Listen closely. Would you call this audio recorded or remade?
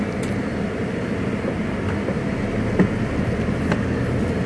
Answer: recorded